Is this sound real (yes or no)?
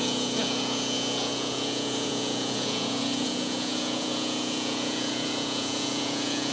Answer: no